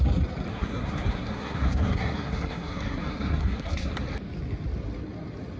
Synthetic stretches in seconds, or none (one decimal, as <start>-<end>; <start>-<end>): 0.5-3.9